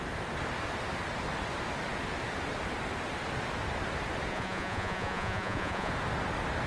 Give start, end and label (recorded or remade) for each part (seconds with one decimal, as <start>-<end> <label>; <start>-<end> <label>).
0.0-4.3 recorded; 4.3-5.9 remade; 5.9-6.7 recorded